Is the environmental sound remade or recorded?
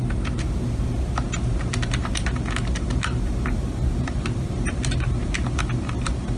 remade